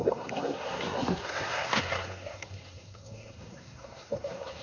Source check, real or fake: fake